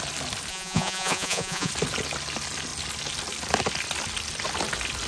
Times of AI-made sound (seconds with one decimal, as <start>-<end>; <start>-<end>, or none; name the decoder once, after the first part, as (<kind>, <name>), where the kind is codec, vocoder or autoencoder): 0.5-1.7 (vocoder, Vocos)